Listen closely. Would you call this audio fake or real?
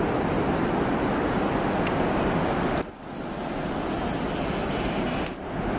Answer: real